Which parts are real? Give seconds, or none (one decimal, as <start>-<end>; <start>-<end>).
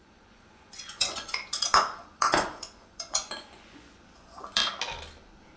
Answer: 4.6-5.6